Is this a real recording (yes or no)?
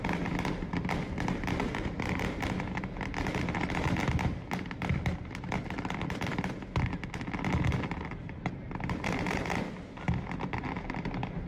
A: yes